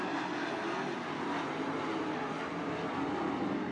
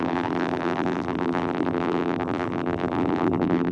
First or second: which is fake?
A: second